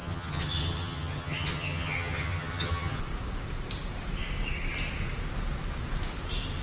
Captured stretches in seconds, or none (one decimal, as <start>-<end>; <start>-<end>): 3.0-6.6